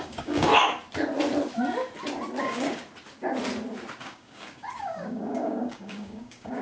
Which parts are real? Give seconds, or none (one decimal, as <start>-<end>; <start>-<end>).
0.5-2.4; 2.8-4.0